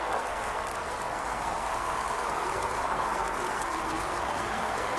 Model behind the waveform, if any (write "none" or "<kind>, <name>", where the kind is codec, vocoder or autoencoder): codec, SNAC